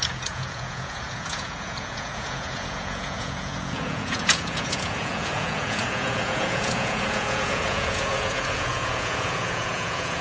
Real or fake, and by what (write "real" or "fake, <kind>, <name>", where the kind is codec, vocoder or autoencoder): fake, vocoder, Vocos